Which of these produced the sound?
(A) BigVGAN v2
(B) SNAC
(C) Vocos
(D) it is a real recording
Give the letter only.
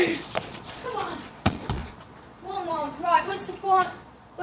C